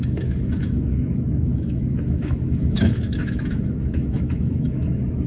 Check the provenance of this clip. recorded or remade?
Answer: remade